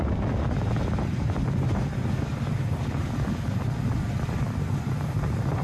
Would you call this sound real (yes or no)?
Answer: yes